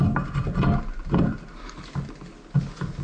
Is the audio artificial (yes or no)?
no